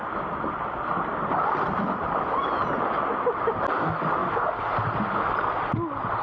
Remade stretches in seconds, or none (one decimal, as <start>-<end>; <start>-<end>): none